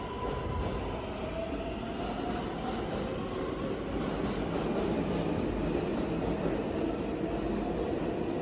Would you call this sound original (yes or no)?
yes